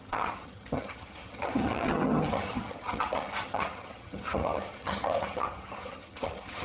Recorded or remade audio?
remade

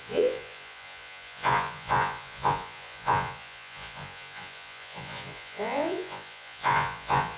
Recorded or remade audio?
remade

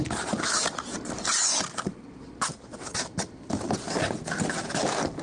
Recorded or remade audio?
recorded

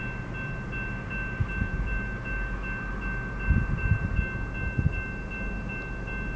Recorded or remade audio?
recorded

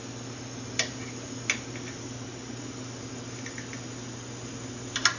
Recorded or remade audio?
recorded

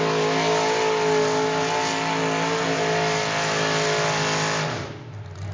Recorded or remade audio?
recorded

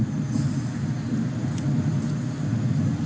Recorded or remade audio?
recorded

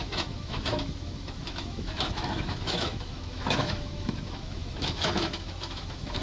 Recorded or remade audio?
remade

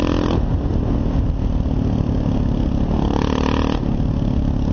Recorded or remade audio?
recorded